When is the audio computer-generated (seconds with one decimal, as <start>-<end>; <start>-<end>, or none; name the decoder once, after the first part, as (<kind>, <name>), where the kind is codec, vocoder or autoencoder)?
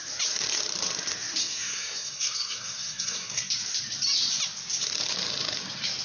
1.4-3.5 (codec, SNAC)